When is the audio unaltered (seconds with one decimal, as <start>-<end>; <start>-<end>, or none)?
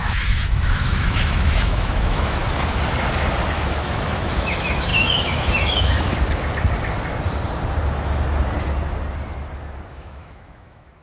2.4-3.7; 6.1-9.9